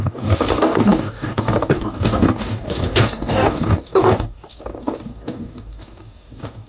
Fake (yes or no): yes